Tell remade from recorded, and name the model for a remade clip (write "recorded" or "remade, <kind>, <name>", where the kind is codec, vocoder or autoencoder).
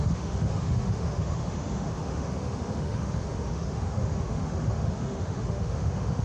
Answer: remade, autoencoder, DAC-VAE